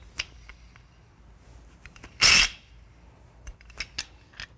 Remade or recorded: recorded